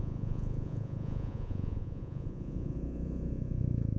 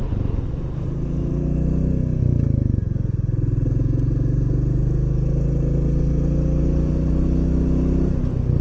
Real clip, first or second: second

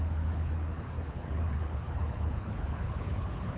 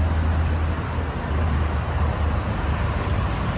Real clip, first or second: second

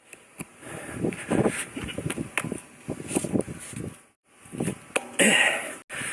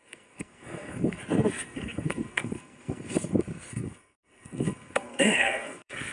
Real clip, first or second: first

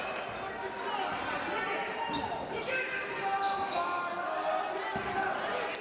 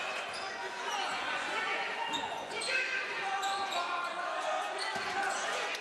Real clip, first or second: first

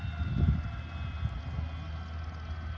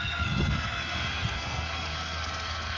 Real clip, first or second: first